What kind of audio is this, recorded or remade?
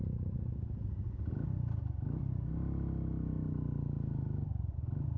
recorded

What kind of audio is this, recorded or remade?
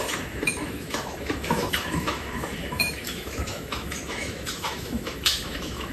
remade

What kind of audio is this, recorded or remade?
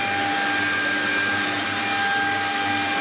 recorded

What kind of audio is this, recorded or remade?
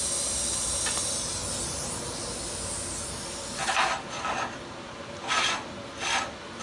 recorded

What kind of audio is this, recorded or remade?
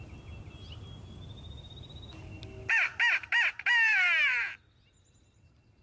recorded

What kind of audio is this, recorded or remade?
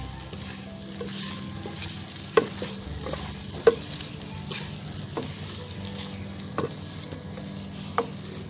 recorded